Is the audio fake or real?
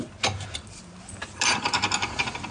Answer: fake